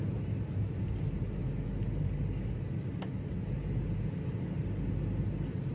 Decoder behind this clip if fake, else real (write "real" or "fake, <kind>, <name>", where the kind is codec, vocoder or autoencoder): real